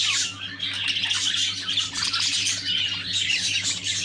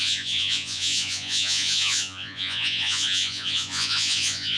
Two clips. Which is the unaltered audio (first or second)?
first